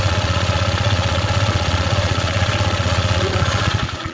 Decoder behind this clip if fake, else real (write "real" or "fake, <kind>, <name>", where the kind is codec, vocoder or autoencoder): fake, vocoder, Vocos